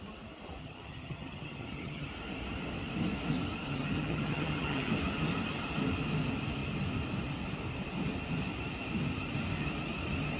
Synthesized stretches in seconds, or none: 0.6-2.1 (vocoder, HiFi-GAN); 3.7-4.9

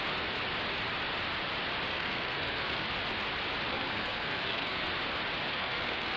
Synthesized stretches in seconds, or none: 1.9-2.9 (codec, SNAC); 3.7-4.9; 5.5-6.2

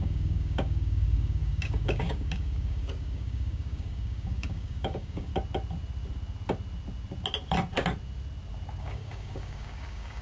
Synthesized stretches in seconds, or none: 0.0-5.3 (codec, DAC); 8.8-10.2

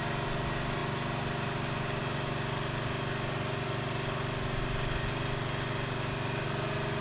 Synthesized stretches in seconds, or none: none

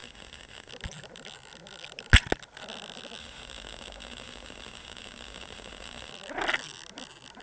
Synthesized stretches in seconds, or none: 0.0-0.7 (autoencoder, DAC-VAE); 3.2-6.1

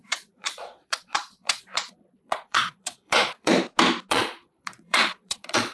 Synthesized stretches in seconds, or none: 0.0-3.5 (vocoder, Vocos); 4.1-5.7

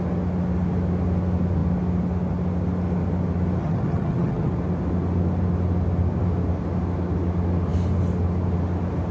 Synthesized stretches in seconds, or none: 3.6-4.5 (vocoder, HiFi-GAN)

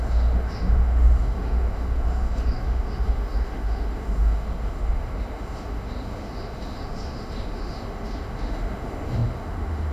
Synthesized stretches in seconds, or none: 0.0-9.9 (autoencoder, DAC-VAE)